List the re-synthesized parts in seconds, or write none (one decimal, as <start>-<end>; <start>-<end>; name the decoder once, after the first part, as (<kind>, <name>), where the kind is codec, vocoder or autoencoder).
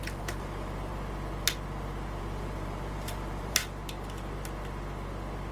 0.0-0.9 (vocoder, BigVGAN v2); 2.2-3.6